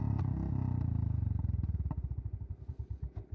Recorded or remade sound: recorded